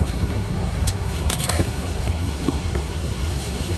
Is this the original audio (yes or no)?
no